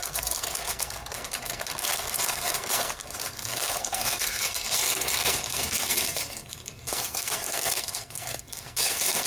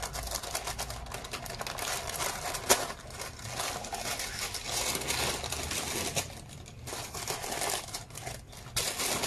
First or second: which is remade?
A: first